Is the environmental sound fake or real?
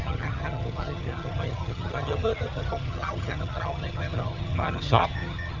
fake